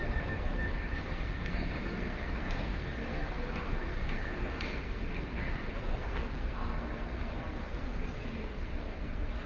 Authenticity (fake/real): fake